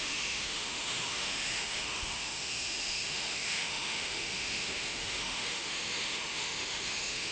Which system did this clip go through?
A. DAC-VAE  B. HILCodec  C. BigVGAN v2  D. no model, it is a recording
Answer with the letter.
A